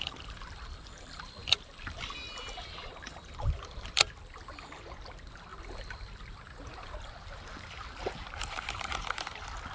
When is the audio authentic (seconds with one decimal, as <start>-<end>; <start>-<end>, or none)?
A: none

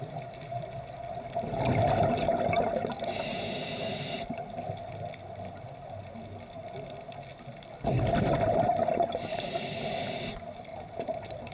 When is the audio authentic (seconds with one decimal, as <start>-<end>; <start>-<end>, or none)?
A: 0.0-11.5

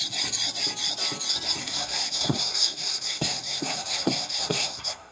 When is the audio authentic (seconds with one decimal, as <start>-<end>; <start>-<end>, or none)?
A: 0.0-1.6

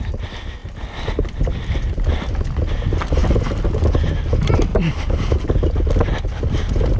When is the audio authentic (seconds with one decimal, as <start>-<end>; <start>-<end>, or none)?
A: 0.0-7.0

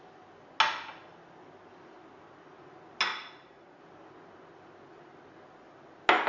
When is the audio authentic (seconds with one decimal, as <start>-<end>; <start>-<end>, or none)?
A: 0.0-3.1; 3.8-6.3

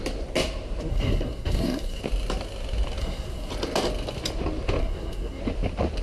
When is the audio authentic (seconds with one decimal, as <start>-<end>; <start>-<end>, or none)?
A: 0.0-0.9; 2.0-3.0; 3.5-4.8; 5.4-6.0